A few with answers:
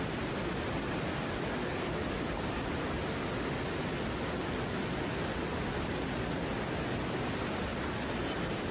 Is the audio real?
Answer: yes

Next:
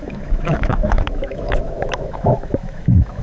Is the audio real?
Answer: no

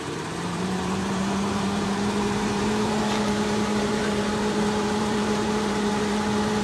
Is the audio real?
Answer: no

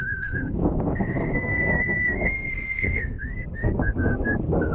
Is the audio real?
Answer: no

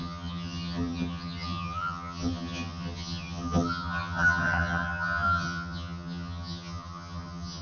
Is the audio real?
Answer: no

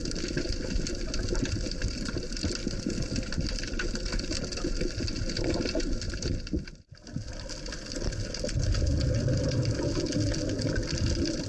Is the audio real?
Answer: yes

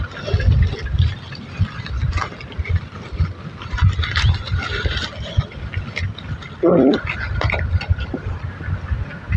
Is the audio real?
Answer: yes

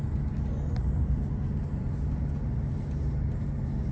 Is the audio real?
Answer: yes